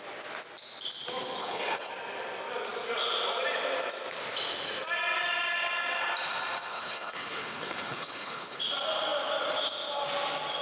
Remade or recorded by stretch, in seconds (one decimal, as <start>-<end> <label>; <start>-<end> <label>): 0.0-1.4 recorded; 1.4-1.9 remade; 1.9-6.7 recorded; 6.7-8.6 remade; 8.6-10.6 recorded